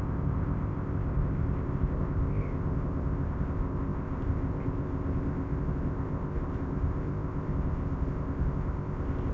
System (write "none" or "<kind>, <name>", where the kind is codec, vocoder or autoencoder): codec, ZipCodec